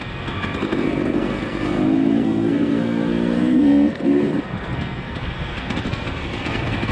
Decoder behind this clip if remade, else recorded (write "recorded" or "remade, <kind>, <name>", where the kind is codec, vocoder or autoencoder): remade, codec, SNAC